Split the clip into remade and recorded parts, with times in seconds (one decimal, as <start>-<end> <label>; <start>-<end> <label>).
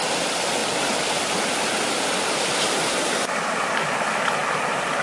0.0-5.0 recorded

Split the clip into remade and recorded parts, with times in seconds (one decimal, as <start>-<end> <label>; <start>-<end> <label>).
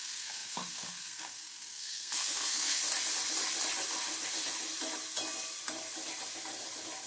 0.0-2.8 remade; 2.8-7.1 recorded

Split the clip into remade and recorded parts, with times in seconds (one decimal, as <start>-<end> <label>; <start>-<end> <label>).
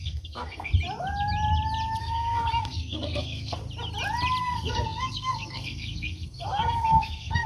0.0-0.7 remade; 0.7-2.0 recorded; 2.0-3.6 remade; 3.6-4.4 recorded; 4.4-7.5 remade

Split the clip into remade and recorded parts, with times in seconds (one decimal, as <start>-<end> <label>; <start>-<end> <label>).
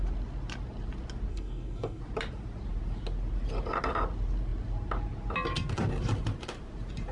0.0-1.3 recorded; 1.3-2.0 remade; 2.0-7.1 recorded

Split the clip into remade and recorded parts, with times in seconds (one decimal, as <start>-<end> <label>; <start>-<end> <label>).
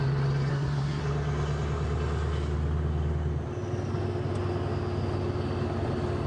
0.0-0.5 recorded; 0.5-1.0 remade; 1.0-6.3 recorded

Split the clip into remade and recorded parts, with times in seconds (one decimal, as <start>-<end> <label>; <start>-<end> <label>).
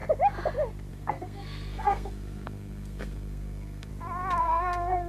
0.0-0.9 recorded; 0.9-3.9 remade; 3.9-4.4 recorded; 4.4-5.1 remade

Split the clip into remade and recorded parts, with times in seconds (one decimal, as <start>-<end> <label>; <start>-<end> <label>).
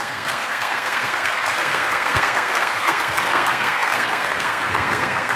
0.0-5.4 remade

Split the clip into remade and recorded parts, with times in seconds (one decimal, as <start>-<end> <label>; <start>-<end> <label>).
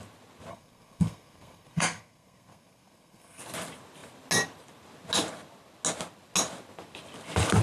0.0-0.5 recorded; 0.5-3.4 remade; 3.4-7.6 recorded